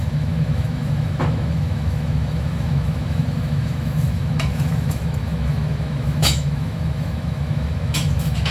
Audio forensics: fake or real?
fake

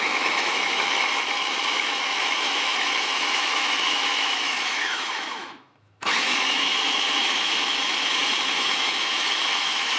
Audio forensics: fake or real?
fake